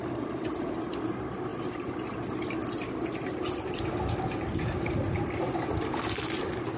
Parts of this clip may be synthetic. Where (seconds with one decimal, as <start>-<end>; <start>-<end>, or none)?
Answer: none